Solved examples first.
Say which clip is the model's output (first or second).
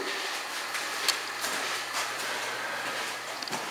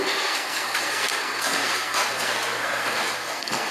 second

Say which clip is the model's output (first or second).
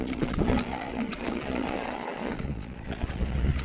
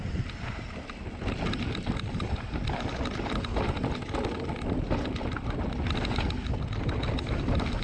first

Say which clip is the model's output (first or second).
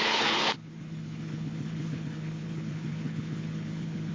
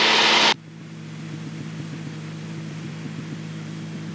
first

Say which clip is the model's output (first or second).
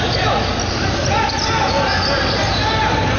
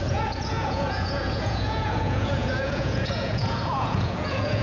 second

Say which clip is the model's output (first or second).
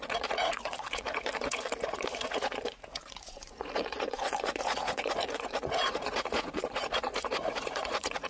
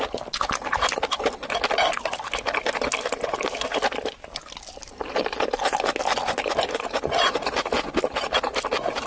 first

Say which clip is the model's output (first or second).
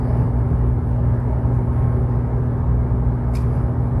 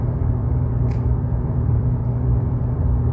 second